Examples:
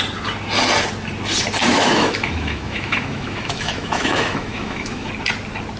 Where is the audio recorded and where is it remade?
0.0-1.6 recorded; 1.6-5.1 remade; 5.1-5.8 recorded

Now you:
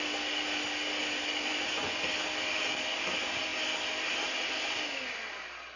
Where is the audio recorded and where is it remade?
0.0-1.5 recorded; 1.5-2.0 remade; 2.0-5.8 recorded

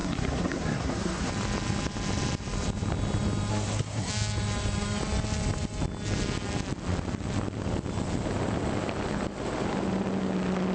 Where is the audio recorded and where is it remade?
0.0-1.3 remade; 1.3-3.5 recorded; 3.5-4.1 remade; 4.1-10.7 recorded

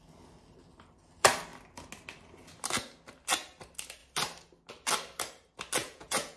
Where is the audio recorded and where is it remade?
0.0-5.8 recorded; 5.8-6.4 remade

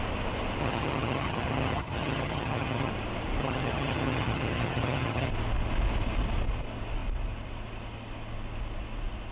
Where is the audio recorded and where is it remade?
0.0-0.6 recorded; 0.6-2.9 remade; 2.9-3.4 recorded; 3.4-5.3 remade; 5.3-9.3 recorded

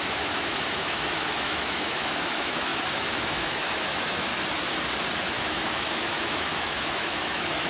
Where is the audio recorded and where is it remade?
0.0-4.3 remade; 4.3-5.2 recorded; 5.2-7.7 remade